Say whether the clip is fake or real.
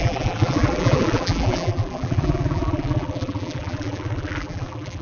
fake